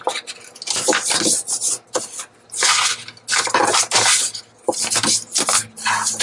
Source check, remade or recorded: recorded